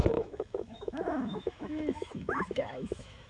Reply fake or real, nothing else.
fake